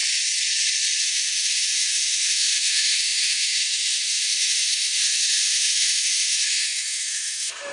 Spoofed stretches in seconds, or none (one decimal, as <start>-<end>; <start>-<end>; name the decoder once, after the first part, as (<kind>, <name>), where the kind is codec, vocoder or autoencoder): 1.0-7.7 (autoencoder, DAC-VAE)